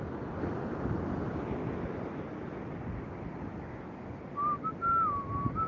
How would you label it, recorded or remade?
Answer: recorded